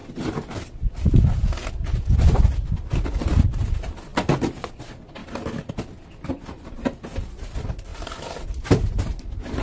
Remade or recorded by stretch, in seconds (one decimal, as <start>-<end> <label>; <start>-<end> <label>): 0.0-9.6 recorded